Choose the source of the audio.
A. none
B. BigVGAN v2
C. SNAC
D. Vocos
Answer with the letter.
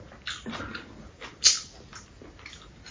A